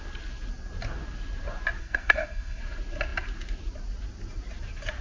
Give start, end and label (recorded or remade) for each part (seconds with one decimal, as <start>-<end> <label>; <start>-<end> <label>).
0.0-1.8 recorded; 1.8-2.6 remade; 2.6-5.0 recorded